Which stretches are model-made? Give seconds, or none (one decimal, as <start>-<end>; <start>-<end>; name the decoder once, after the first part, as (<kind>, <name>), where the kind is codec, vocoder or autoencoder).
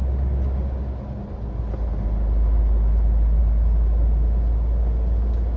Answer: none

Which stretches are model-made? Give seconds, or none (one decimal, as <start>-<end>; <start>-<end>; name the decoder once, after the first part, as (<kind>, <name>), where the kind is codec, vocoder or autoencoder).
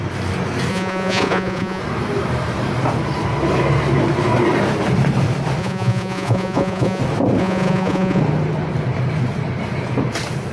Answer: 0.7-1.8 (vocoder, Vocos); 5.6-7.0; 7.4-8.2